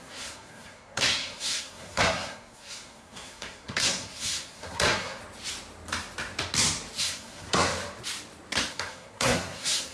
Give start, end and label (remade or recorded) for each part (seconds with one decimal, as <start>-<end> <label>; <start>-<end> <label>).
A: 0.0-5.2 remade; 5.2-7.0 recorded; 7.0-7.7 remade; 7.7-8.7 recorded; 8.7-9.9 remade